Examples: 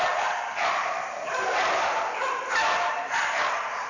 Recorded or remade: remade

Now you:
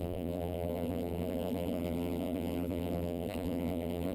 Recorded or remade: remade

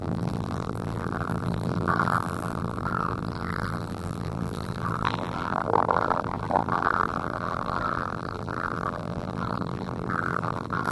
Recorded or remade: remade